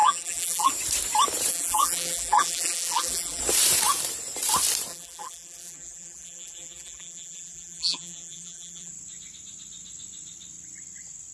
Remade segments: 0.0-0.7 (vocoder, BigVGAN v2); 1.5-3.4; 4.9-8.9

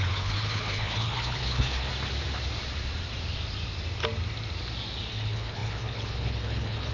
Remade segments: 0.0-1.9 (codec, HILCodec); 5.1-6.9

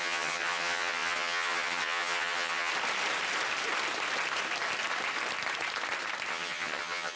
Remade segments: 0.0-2.7 (vocoder, HiFi-GAN); 6.3-7.2

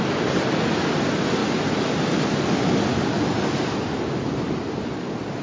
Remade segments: none

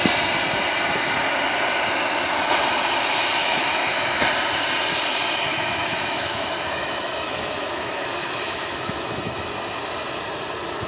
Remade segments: 3.4-4.2 (autoencoder, DAC-VAE); 5.5-9.5

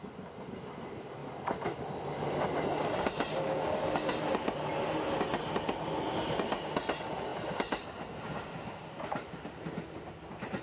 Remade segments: none

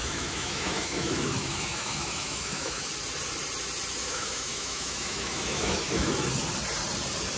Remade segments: 0.0-2.9 (autoencoder, DAC-VAE); 4.0-6.1